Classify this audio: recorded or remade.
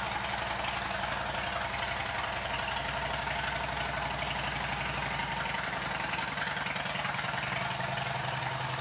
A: recorded